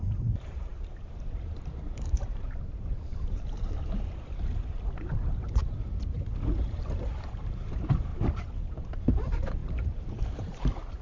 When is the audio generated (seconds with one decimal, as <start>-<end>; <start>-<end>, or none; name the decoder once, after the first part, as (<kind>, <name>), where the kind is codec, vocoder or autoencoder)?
0.0-8.1 (vocoder, BigVGAN v2); 9.1-11.0